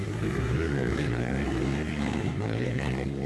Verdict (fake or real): fake